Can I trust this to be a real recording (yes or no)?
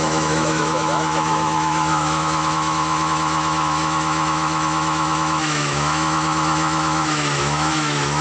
no